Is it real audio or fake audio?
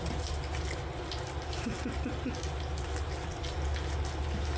real